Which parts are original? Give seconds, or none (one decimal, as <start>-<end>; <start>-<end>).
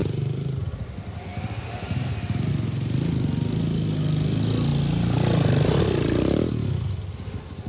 0.9-7.7